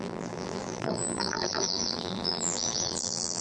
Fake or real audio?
fake